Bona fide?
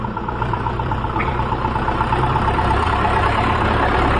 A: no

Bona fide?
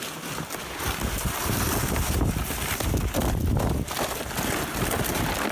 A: yes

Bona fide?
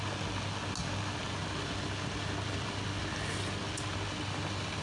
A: yes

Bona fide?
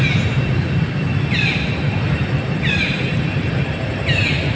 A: yes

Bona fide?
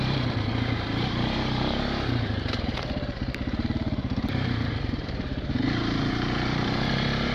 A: no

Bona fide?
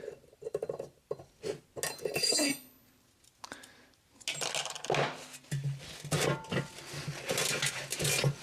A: yes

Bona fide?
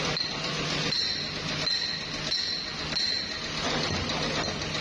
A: yes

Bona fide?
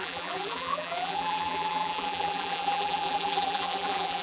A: no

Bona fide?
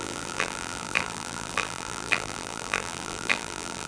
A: no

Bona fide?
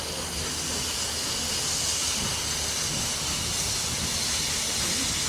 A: yes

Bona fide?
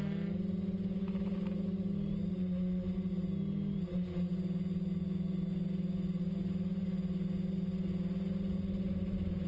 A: yes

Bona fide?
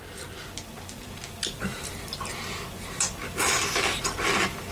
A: yes